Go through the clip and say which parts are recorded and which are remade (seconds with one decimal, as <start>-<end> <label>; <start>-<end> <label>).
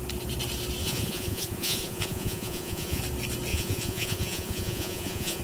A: 0.0-0.8 recorded; 0.8-3.0 remade; 3.0-3.5 recorded; 3.5-5.4 remade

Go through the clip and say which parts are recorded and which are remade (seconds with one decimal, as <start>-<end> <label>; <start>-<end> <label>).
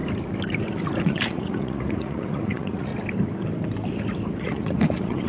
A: 0.0-1.0 recorded; 1.0-2.9 remade; 2.9-4.4 recorded; 4.4-5.3 remade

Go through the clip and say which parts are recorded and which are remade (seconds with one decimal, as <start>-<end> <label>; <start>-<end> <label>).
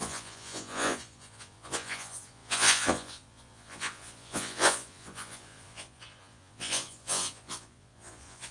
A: 0.0-8.5 remade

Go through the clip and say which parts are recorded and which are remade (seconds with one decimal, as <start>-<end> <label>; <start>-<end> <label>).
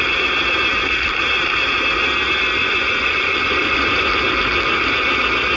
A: 0.0-2.6 recorded; 2.6-4.1 remade; 4.1-5.6 recorded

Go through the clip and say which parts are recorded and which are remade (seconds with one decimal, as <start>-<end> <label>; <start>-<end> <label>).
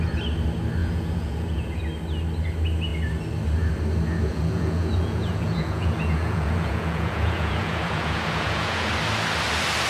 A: 0.0-0.8 recorded; 0.8-1.8 remade; 1.8-4.3 recorded; 4.3-8.9 remade; 8.9-9.9 recorded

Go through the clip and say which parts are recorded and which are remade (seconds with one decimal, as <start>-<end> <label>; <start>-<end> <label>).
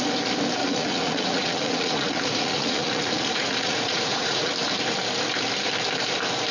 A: 0.0-0.6 recorded; 0.6-4.5 remade; 4.5-6.5 recorded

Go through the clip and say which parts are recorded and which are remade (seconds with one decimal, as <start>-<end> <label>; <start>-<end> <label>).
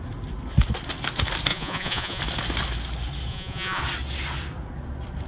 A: 0.0-1.5 recorded; 1.5-2.2 remade; 2.2-3.3 recorded; 3.3-3.8 remade; 3.8-5.3 recorded